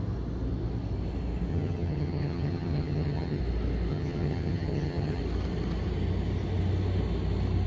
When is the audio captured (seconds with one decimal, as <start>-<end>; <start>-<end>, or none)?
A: 0.0-1.5; 3.4-3.9; 5.2-7.7